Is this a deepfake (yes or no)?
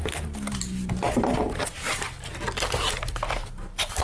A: yes